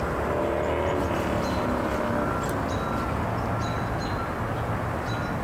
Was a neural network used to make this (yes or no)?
no